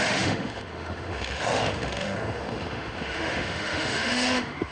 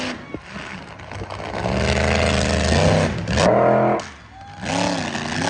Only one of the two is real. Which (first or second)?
second